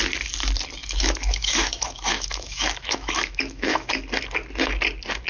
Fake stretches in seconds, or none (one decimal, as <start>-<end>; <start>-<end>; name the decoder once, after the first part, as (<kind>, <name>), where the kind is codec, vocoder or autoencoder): 0.8-4.0 (autoencoder, DAC-VAE)